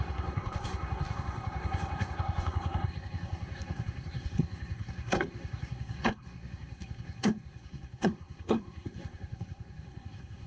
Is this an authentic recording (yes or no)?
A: no